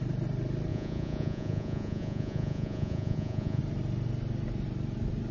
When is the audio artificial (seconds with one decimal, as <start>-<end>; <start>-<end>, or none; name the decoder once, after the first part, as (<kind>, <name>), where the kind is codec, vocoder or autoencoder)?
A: 0.7-3.6 (vocoder, Vocos)